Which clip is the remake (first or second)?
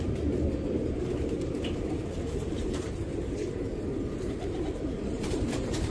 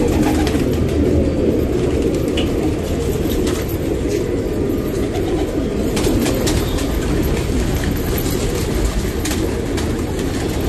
first